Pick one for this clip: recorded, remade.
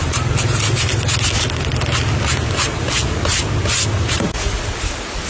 recorded